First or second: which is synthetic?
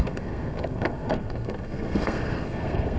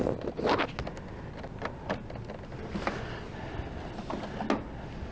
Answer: first